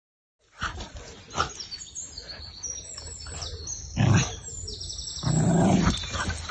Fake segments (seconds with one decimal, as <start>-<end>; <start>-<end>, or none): none